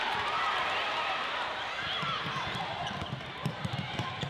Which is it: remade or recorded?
remade